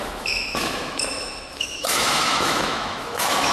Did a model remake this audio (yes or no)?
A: yes